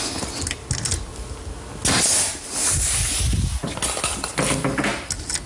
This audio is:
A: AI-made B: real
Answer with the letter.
B